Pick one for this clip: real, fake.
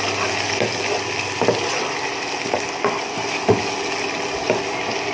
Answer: real